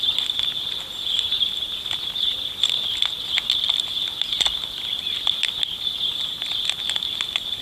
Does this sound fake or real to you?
real